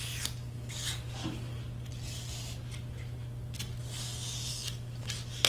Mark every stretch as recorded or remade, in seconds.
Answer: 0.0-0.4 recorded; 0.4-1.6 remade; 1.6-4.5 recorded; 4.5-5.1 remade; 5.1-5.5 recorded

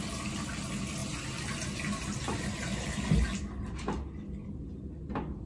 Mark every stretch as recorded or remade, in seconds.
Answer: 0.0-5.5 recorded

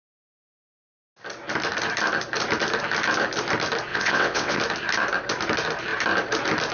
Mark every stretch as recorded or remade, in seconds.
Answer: 0.0-3.9 recorded; 3.9-4.6 remade; 4.6-6.7 recorded